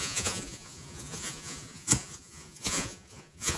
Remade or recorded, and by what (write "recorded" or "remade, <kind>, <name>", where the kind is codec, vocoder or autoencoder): remade, vocoder, Vocos